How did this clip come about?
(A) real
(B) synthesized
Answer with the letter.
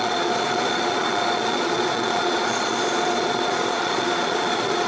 B